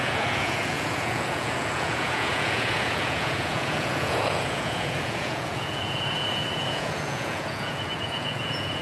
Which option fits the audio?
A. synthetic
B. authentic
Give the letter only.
A